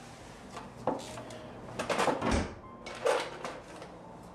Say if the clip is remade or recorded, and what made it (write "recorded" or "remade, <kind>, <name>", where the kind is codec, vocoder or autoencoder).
recorded